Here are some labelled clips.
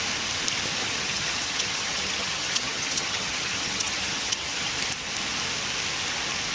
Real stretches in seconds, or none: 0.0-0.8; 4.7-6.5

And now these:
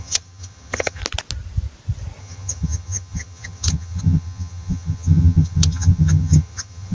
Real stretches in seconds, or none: 1.0-2.2